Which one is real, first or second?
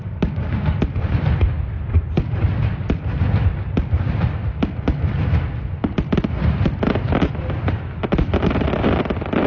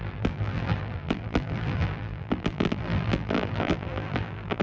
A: first